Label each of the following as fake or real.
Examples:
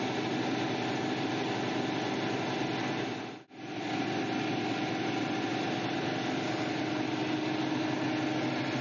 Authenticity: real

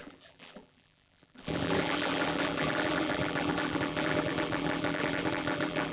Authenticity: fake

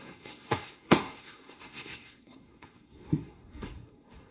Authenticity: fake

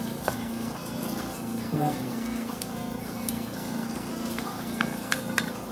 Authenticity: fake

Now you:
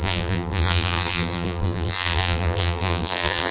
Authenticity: fake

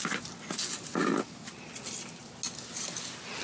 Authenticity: real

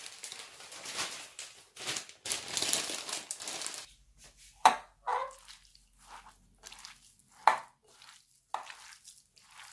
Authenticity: real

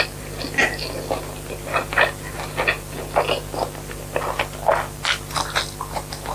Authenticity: real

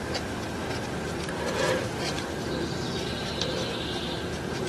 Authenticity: fake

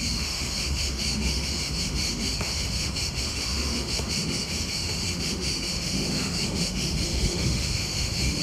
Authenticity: fake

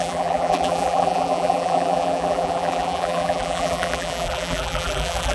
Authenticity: fake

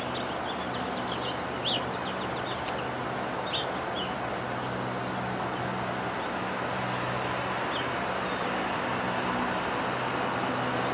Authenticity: real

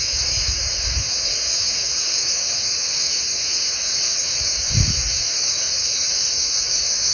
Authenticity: fake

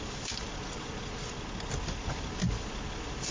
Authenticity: real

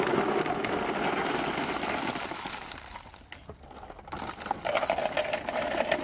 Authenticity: real